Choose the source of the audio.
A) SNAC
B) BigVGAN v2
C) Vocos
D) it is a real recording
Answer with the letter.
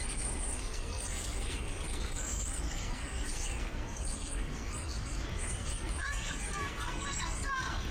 A